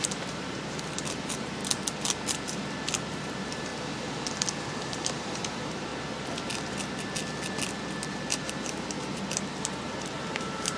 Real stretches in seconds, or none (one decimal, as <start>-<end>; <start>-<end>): 1.6-3.1; 3.7-4.8; 5.9-8.1